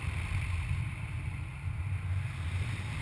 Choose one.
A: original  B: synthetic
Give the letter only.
B